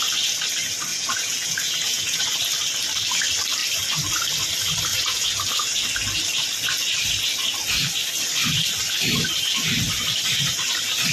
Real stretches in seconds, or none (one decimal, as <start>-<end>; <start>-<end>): 0.0-0.9; 2.2-4.9; 5.5-11.1